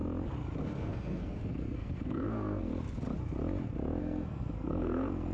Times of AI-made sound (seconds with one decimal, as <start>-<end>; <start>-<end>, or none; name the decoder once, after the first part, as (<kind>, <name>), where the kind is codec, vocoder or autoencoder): 0.6-2.7 (codec, SNAC); 4.0-5.3